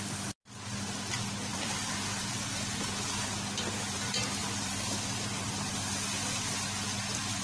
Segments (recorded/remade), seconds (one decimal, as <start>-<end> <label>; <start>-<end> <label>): 0.0-1.5 recorded; 1.5-2.3 remade; 2.3-4.4 recorded; 4.4-5.4 remade; 5.4-7.4 recorded